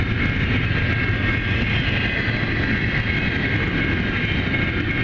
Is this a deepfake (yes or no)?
no